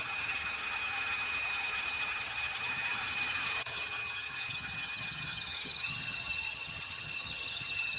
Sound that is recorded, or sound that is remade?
remade